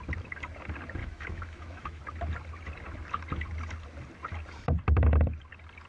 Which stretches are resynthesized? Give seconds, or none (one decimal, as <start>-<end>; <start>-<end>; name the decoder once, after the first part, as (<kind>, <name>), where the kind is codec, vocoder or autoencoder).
1.0-2.0 (autoencoder, DAC-VAE)